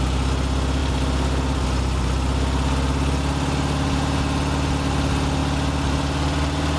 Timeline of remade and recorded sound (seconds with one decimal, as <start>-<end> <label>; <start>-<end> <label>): 0.0-6.8 recorded